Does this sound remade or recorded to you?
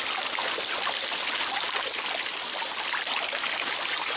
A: recorded